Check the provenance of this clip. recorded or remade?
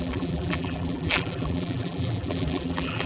remade